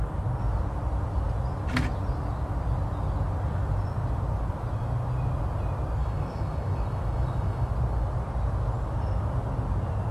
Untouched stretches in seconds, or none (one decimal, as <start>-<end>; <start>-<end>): 0.0-6.0; 7.7-10.1